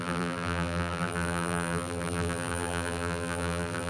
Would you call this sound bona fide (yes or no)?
no